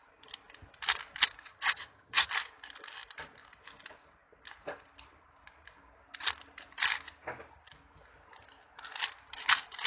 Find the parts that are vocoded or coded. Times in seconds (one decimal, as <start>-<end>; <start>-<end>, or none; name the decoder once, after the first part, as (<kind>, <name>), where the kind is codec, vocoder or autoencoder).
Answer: 1.5-2.3 (vocoder, HiFi-GAN)